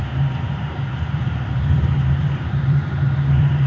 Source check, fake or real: fake